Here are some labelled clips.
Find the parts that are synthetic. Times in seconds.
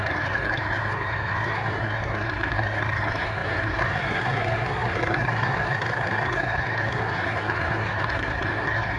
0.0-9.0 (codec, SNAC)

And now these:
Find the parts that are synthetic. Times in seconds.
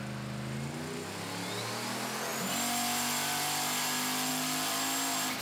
none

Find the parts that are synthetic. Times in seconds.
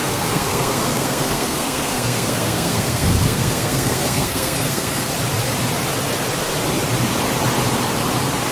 0.0-5.1 (codec, SNAC)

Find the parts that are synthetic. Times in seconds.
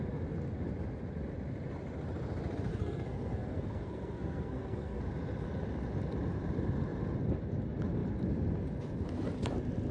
2.7-5.0 (codec, SNAC)